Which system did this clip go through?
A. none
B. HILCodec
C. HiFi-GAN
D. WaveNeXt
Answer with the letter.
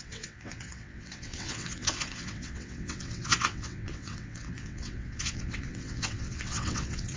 D